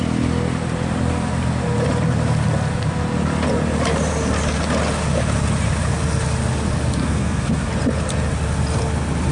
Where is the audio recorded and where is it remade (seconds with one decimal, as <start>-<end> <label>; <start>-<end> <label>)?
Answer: 0.0-7.0 recorded; 7.0-7.7 remade; 7.7-9.3 recorded